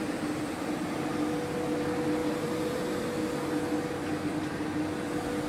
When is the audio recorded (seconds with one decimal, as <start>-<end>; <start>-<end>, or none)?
0.0-2.2; 2.8-5.5